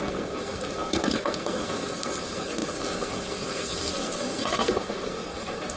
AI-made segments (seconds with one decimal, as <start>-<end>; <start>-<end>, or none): 0.0-5.8